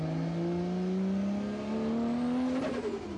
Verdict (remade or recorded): recorded